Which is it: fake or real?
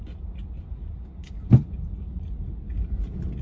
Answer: real